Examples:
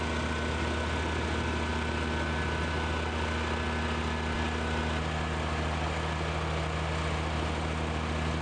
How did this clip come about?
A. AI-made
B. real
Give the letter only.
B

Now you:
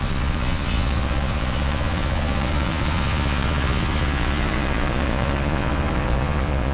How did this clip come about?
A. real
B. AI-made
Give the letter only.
B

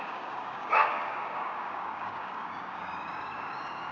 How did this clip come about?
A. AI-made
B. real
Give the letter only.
A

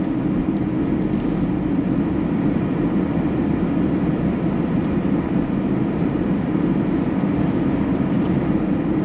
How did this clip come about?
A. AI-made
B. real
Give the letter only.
B